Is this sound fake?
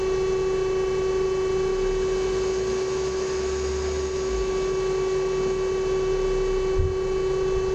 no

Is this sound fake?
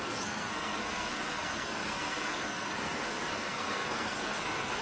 yes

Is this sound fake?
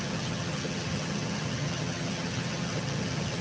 yes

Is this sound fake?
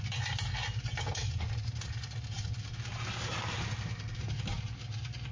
no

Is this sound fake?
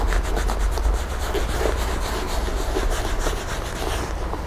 no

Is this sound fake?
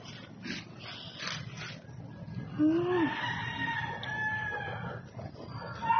no